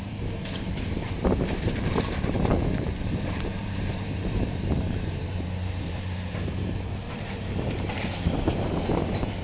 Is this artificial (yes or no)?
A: yes